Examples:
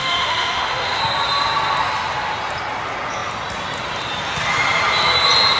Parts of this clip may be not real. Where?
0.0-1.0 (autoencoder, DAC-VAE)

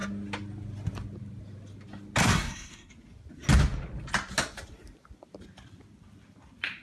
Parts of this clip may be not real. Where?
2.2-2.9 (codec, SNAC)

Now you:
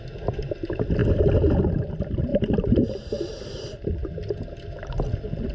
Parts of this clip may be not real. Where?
2.3-4.1 (vocoder, BigVGAN v2)

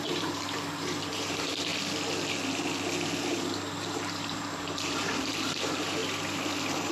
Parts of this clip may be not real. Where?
0.0-1.7 (vocoder, BigVGAN v2); 3.3-6.0